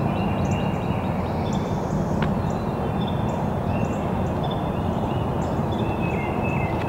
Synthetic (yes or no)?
no